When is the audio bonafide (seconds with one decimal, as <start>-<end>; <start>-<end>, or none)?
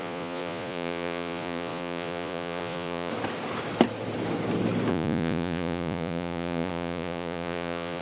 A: 3.1-4.9